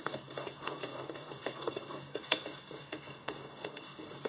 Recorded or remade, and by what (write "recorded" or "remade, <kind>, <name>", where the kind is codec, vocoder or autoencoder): remade, codec, SNAC